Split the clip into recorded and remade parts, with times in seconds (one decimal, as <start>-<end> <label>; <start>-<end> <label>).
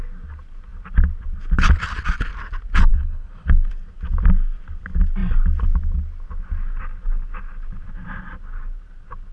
0.0-2.9 recorded; 2.9-3.7 remade; 3.7-9.3 recorded